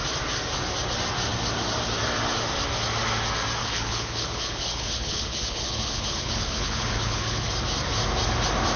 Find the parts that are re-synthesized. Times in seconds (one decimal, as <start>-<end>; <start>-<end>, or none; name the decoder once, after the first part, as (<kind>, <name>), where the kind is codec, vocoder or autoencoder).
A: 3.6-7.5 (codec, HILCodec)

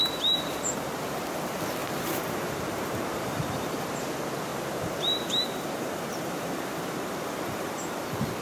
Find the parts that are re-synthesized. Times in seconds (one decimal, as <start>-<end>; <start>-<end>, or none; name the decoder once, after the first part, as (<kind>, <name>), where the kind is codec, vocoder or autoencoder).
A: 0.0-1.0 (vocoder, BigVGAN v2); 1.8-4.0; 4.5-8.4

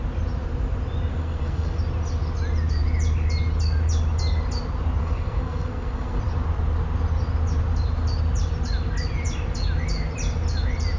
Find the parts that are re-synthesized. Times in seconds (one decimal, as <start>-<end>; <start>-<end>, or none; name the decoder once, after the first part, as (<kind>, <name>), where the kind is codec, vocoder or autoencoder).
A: 1.1-1.8 (codec, SNAC); 5.0-6.2